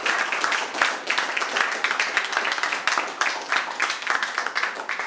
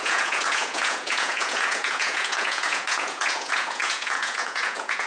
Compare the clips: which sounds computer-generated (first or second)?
second